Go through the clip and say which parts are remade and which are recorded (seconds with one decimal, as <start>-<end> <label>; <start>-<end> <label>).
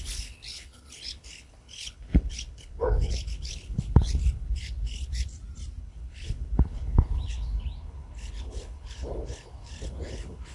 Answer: 0.0-5.3 remade; 5.3-5.8 recorded; 5.8-10.5 remade